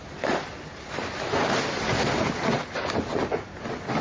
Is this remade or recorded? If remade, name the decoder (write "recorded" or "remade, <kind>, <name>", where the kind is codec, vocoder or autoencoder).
remade, vocoder, BigVGAN v2